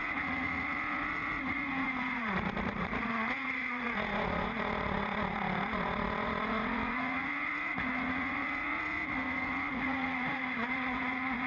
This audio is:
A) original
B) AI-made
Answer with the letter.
B